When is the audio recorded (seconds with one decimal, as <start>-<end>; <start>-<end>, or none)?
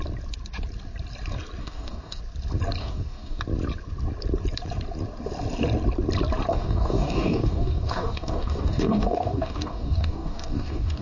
0.0-1.6; 2.2-2.8; 3.4-6.5